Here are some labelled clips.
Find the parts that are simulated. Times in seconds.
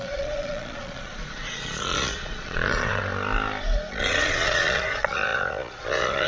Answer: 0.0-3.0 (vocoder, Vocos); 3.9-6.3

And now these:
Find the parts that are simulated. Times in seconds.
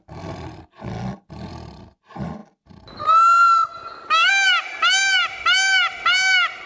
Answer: none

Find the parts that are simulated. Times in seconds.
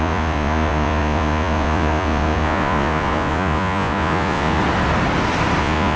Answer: 0.0-4.6 (vocoder, Vocos); 5.6-6.0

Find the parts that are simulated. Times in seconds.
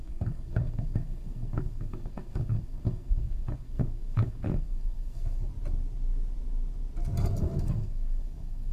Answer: 0.0-5.5 (codec, SNAC); 7.4-8.7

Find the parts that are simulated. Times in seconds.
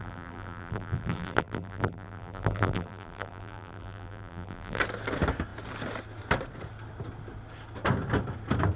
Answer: 0.0-4.8 (vocoder, BigVGAN v2)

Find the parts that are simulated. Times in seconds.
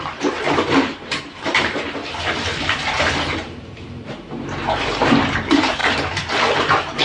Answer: 0.0-2.0 (vocoder, BigVGAN v2); 2.6-5.8; 6.6-7.0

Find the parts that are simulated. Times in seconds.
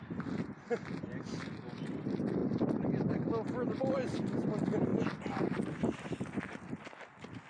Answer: none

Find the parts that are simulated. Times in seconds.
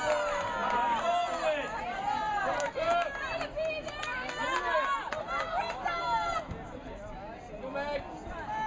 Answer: none